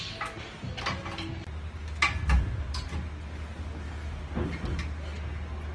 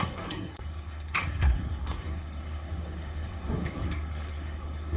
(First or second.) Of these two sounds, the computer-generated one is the second